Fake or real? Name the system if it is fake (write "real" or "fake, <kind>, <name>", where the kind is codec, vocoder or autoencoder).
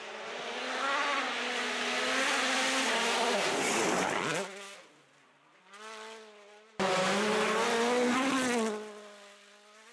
real